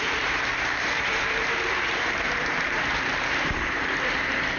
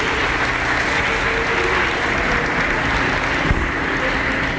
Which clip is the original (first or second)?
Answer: second